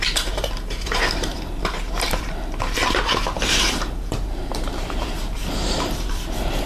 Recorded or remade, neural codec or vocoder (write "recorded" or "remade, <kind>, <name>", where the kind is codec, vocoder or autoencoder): remade, vocoder, BigVGAN v2